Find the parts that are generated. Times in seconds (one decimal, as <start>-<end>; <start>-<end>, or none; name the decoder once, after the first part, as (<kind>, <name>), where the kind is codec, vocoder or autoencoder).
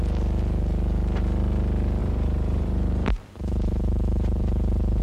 2.0-5.0 (vocoder, BigVGAN v2)